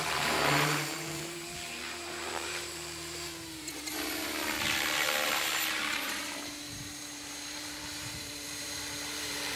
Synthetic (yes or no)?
yes